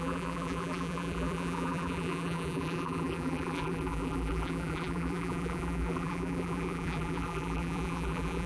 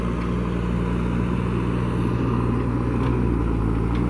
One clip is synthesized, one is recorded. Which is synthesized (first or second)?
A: first